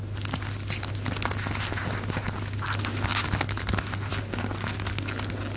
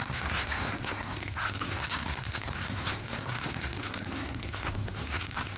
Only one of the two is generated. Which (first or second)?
second